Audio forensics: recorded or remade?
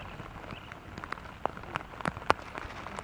recorded